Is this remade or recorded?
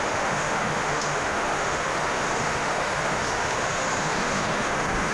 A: remade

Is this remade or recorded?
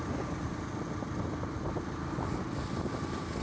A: recorded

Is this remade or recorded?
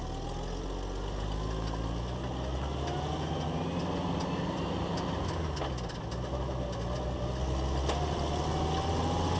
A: recorded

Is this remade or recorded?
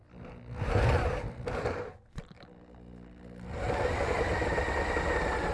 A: recorded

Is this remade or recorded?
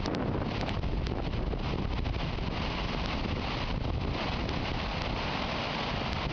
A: recorded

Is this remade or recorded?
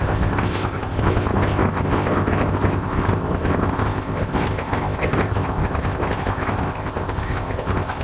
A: remade